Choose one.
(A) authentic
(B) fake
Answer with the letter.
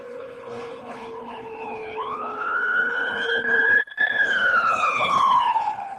B